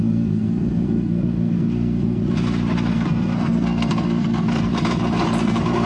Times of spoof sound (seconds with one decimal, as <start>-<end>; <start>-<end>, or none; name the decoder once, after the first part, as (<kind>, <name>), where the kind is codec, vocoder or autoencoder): 0.0-2.2 (codec, SNAC); 2.9-4.7; 5.4-5.9